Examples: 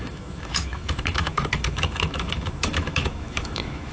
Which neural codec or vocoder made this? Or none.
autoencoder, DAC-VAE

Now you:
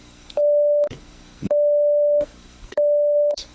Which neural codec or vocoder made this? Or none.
codec, SNAC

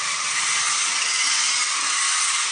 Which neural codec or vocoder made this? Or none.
none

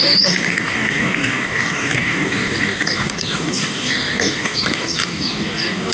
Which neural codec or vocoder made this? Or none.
codec, DAC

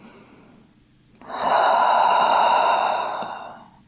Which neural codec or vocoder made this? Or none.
none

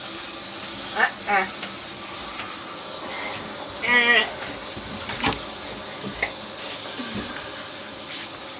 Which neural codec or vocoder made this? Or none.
none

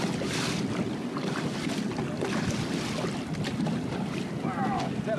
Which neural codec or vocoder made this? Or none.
none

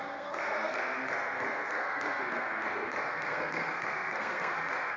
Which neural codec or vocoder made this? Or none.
codec, SNAC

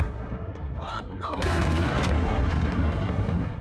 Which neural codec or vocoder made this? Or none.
codec, SNAC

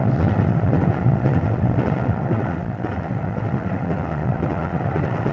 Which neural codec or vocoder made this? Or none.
vocoder, WaveNeXt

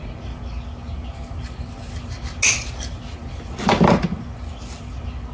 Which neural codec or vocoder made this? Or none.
none